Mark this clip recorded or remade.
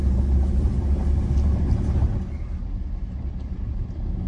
recorded